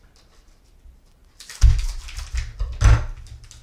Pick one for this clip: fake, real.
real